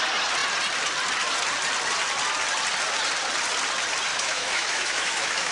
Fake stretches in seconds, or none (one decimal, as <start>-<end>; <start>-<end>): 4.1-5.5